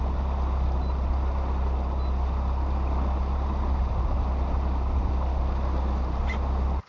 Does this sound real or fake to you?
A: real